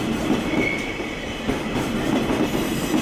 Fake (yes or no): no